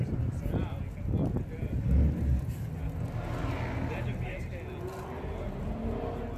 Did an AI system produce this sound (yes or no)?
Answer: no